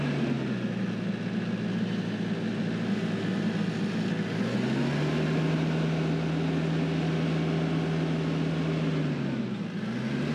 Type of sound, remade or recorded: recorded